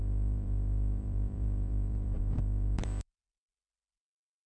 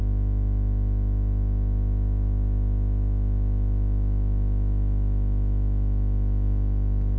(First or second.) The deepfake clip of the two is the first